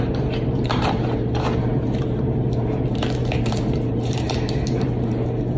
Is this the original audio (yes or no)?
no